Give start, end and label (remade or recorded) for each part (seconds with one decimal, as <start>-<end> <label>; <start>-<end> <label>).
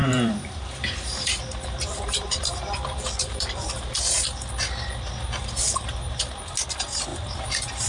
0.0-3.9 remade; 3.9-5.4 recorded; 5.4-6.2 remade; 6.2-7.9 recorded